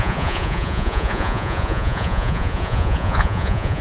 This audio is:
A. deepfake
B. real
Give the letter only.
A